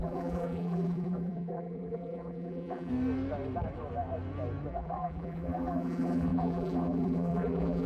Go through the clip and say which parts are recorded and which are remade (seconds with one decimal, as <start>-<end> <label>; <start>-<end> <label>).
0.0-2.9 remade; 2.9-4.7 recorded; 4.7-7.9 remade